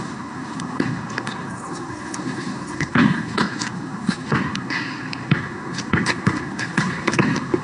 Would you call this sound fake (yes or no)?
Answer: yes